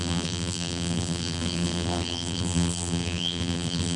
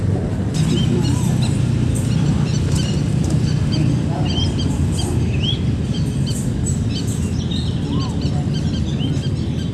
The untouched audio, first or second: second